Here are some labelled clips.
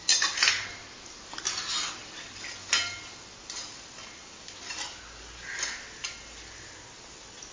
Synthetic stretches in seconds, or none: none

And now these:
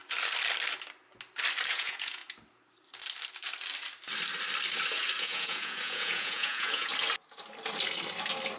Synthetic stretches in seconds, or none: 1.7-2.2 (vocoder, Vocos); 5.2-6.9

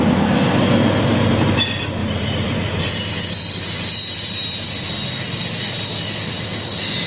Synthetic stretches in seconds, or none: 2.0-2.8 (vocoder, Vocos)

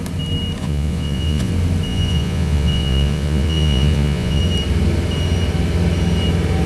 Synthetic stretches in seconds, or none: 0.6-1.5 (vocoder, Vocos); 1.9-4.4

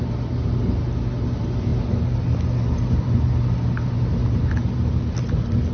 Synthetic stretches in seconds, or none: none